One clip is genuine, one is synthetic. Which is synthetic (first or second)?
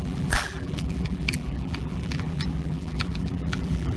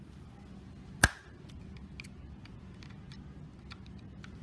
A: first